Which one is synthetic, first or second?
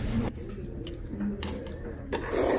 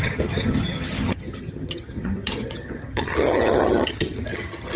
second